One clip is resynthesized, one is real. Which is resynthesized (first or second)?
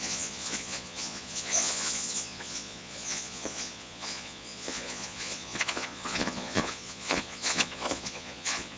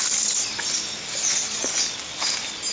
first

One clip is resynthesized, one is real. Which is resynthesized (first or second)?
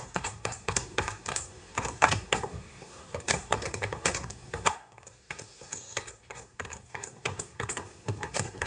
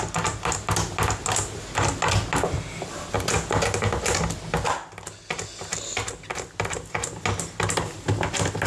first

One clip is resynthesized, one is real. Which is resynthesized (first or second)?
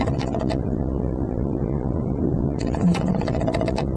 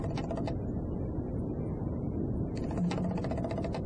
first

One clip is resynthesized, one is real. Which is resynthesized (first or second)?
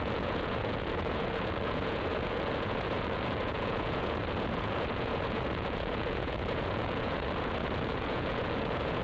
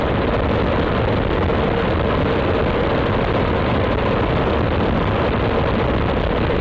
first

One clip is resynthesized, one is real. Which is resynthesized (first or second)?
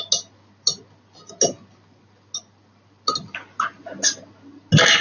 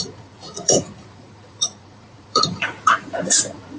second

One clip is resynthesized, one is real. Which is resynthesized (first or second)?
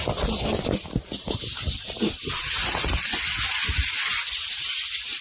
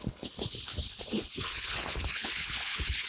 second